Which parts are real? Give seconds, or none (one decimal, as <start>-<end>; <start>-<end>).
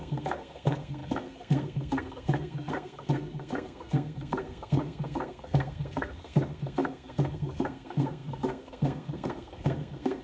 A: none